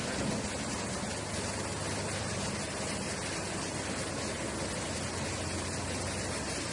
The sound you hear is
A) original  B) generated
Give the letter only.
A